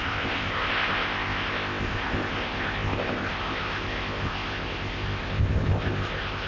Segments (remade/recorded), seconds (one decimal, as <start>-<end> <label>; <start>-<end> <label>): 0.0-6.5 remade